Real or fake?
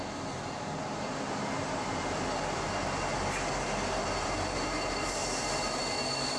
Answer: real